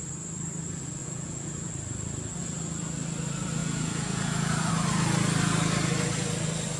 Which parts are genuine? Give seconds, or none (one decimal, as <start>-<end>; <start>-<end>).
0.0-1.0; 1.7-3.6; 4.7-6.8